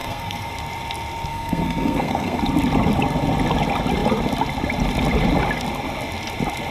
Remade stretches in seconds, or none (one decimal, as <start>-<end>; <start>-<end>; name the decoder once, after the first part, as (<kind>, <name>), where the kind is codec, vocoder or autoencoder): 0.0-0.5 (codec, SNAC); 1.3-2.4